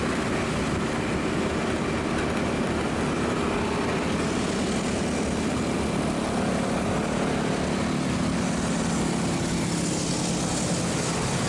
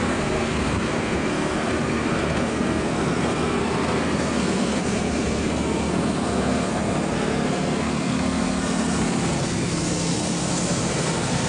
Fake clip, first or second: second